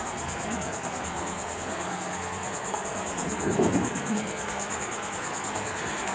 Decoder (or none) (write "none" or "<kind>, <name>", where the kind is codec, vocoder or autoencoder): codec, SNAC